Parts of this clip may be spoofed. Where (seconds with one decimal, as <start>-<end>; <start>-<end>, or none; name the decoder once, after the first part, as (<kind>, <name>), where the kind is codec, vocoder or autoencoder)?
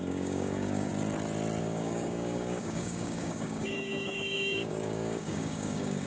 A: 0.0-0.9 (codec, DAC); 1.6-6.1